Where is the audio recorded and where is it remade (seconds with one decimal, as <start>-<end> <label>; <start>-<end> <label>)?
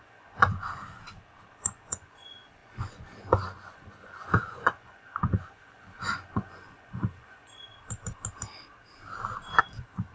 0.0-1.0 remade; 1.0-1.5 recorded; 1.5-7.7 remade; 7.7-9.6 recorded; 9.6-10.1 remade